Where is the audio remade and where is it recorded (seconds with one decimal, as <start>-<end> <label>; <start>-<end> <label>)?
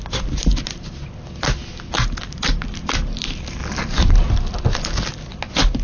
0.0-5.8 recorded